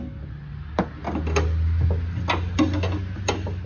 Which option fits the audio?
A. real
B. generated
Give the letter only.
A